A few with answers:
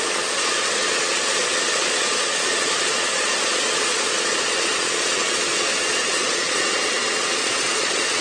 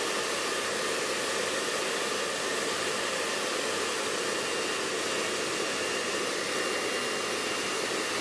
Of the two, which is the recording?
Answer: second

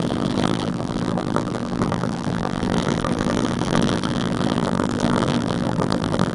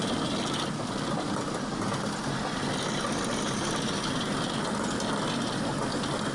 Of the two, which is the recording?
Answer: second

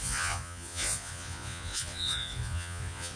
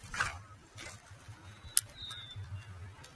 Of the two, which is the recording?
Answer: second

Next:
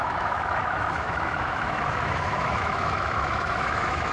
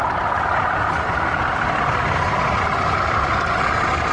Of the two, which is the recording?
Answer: second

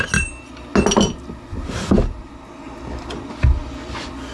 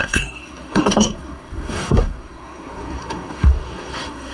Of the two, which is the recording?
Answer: first